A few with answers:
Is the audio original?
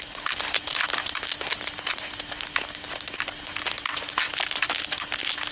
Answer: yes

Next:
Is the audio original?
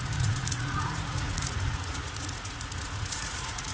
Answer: no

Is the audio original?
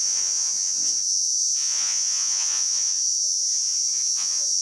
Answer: no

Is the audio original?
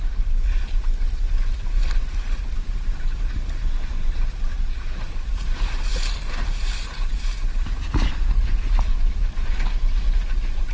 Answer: yes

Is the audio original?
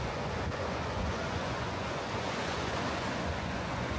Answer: no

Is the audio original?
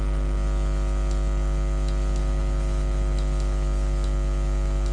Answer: yes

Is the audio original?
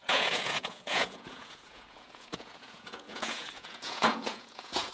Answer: no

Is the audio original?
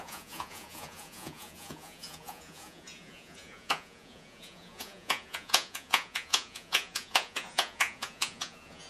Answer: no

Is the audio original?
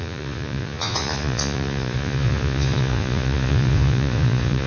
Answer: no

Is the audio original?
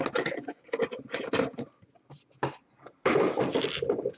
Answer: yes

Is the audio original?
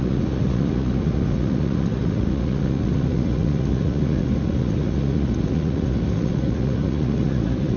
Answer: no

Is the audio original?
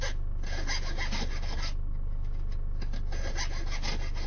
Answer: yes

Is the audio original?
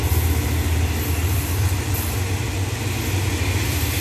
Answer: yes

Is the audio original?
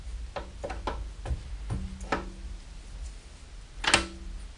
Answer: yes